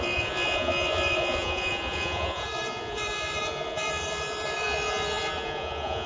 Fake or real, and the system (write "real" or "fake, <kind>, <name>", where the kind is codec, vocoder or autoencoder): fake, vocoder, Vocos